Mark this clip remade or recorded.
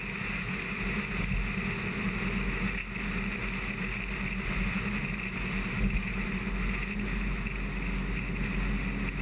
recorded